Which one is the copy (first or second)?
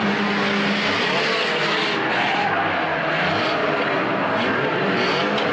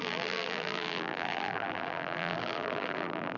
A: second